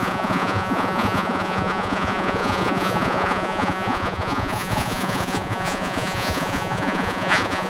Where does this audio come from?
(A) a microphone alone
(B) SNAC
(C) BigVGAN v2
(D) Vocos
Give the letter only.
D